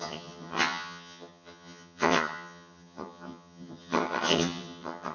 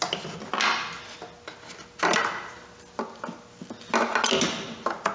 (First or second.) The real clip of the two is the second